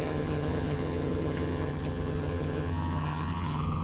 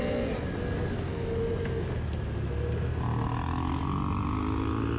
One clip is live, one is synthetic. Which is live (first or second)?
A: second